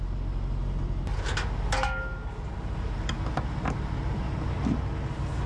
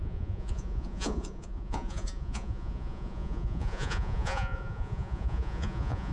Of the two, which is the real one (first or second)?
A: first